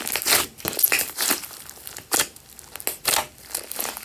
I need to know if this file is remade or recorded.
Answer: recorded